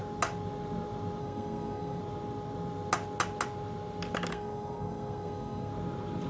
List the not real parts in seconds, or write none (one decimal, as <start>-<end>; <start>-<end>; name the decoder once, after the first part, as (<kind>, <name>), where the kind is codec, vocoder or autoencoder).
1.2-2.0 (codec, SNAC); 4.3-5.7